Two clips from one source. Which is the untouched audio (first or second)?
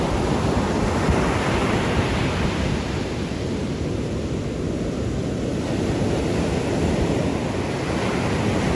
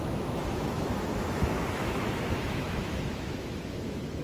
first